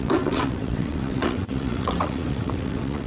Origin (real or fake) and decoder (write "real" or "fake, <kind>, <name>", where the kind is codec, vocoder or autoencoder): fake, vocoder, WaveNeXt